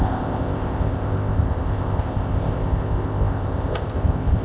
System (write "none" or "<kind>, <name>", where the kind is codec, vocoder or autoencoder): codec, ZipCodec